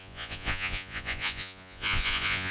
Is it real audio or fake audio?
fake